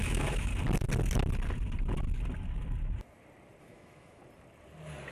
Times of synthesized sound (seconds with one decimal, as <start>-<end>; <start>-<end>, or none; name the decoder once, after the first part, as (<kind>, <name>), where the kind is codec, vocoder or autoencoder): 0.0-0.5 (autoencoder, DAC-VAE); 3.6-4.2

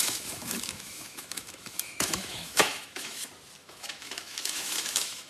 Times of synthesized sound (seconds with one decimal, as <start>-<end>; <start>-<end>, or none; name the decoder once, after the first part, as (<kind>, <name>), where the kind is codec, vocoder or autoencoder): 0.0-3.2 (autoencoder, DAC-VAE); 3.6-5.3

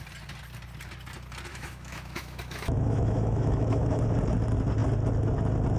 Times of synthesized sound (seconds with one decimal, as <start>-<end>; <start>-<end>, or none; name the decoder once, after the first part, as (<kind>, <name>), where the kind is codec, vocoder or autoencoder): 1.5-4.0 (autoencoder, DAC-VAE)